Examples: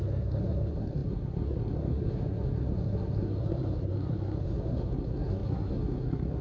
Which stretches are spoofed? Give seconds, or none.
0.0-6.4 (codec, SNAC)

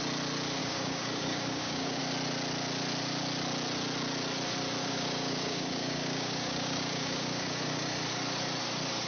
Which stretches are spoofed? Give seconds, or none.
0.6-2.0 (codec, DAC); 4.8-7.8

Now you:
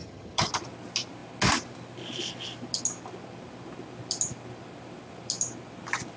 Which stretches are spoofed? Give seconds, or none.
0.0-0.5 (vocoder, HiFi-GAN)